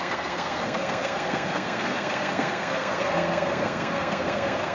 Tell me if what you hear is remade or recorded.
remade